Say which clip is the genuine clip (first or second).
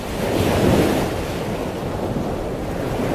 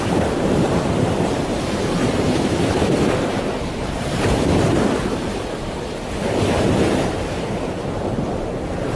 first